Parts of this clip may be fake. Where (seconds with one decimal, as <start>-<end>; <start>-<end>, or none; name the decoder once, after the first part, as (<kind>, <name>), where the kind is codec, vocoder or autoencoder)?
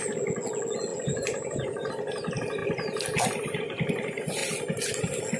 0.9-1.9 (vocoder, Vocos)